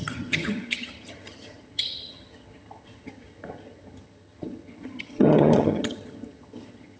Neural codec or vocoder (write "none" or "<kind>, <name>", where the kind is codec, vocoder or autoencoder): vocoder, HiFi-GAN